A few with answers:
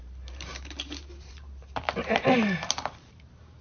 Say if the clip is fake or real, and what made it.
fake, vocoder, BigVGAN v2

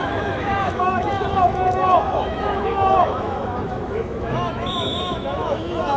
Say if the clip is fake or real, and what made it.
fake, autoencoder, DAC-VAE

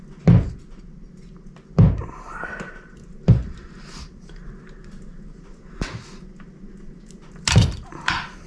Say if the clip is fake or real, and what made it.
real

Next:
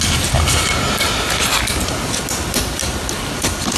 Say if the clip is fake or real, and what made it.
real